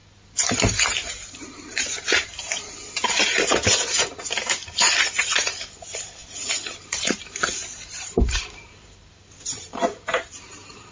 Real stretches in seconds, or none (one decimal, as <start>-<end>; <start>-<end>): 0.0-0.8